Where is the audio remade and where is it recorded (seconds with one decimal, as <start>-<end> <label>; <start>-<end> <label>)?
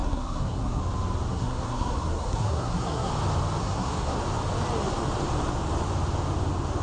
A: 0.0-0.8 remade; 0.8-1.3 recorded; 1.3-3.1 remade; 3.1-3.6 recorded; 3.6-4.2 remade; 4.2-6.8 recorded